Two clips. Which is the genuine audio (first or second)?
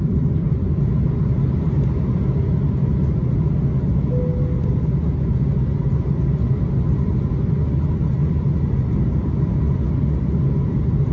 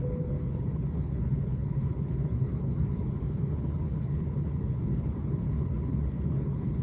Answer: first